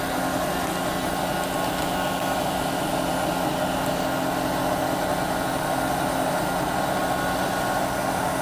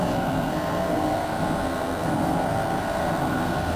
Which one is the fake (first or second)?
second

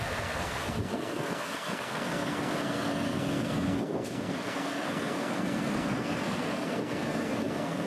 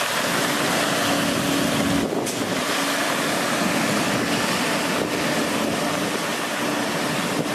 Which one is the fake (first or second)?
first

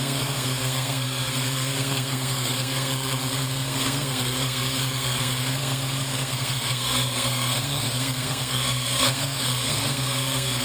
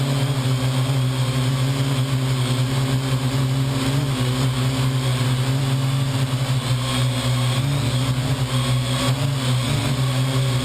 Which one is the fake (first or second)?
first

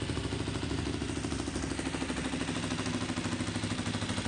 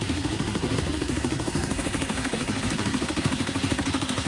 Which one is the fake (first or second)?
second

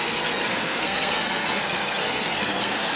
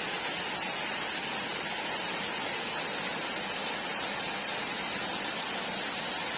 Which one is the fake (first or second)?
first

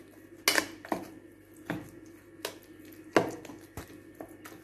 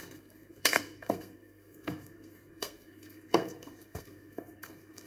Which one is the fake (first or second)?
second